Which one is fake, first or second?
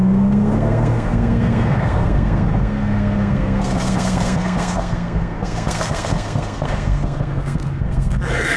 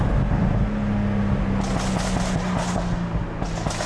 first